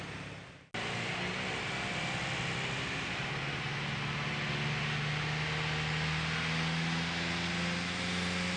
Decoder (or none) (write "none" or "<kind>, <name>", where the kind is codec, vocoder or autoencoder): none